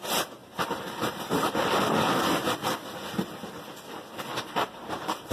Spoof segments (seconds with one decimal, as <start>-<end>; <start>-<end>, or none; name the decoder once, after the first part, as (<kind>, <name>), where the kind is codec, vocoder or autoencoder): 0.4-3.6 (vocoder, BigVGAN v2); 4.3-5.3